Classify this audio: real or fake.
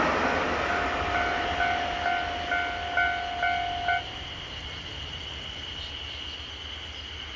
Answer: real